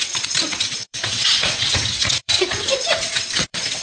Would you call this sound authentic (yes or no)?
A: no